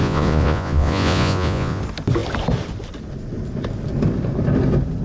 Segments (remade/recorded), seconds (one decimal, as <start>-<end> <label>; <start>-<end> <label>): 0.0-1.8 remade; 1.8-5.0 recorded